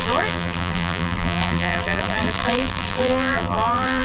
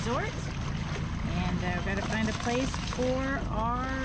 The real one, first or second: second